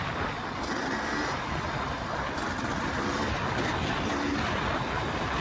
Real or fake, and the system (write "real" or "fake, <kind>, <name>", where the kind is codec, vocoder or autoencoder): real